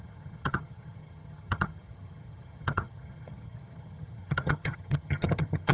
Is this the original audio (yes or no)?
no